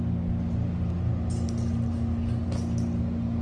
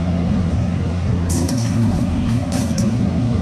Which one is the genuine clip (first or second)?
first